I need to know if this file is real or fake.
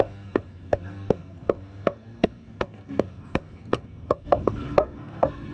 fake